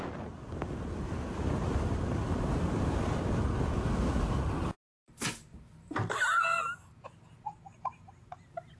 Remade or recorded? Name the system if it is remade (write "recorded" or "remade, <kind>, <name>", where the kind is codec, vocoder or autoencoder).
recorded